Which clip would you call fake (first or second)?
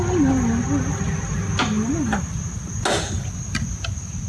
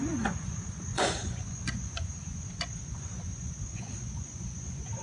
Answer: second